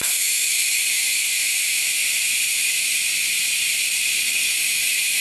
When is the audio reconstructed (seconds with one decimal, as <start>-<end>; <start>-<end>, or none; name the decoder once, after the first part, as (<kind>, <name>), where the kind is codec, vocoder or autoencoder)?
0.0-2.0 (autoencoder, DAC-VAE); 2.5-3.0; 4.5-5.2